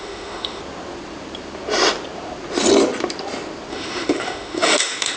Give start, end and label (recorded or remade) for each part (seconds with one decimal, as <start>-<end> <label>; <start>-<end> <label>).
0.0-0.6 remade; 0.6-3.7 recorded; 3.7-5.2 remade